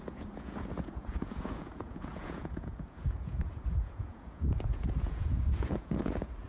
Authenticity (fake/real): fake